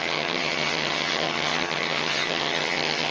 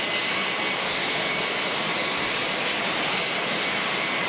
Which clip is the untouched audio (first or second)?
second